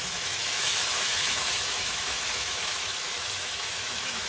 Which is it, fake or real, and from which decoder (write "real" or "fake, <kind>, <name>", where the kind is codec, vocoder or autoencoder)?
fake, autoencoder, DAC-VAE